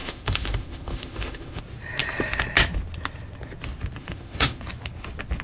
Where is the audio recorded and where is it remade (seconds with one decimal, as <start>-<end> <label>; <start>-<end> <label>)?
0.0-1.6 remade; 1.6-4.0 recorded; 4.0-4.6 remade; 4.6-5.4 recorded